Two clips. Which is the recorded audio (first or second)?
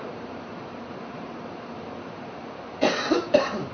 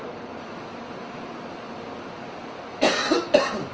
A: second